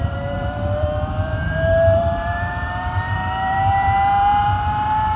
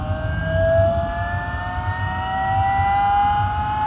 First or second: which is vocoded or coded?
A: first